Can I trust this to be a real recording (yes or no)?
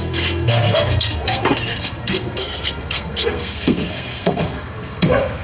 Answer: no